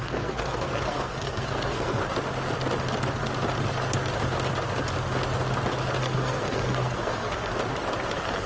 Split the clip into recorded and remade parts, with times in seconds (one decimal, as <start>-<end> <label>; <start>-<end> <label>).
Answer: 0.0-2.0 remade; 2.0-6.0 recorded; 6.0-7.5 remade; 7.5-8.1 recorded; 8.1-8.5 remade